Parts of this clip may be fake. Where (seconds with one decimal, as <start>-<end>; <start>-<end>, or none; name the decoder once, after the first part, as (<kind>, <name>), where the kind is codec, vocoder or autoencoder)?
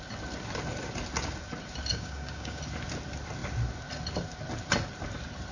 1.9-2.6 (codec, DAC)